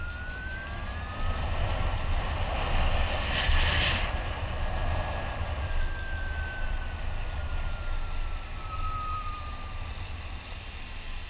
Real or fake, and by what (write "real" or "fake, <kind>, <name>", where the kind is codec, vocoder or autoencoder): real